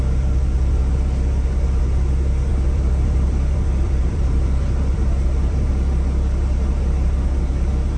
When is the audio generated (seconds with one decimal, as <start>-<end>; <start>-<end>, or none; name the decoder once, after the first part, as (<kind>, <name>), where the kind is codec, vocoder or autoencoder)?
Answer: 2.5-5.7 (vocoder, BigVGAN v2)